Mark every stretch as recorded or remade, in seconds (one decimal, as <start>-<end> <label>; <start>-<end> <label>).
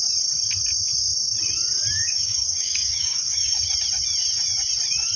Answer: 0.0-2.0 recorded; 2.0-3.6 remade; 3.6-5.2 recorded